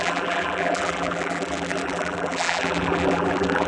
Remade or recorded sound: remade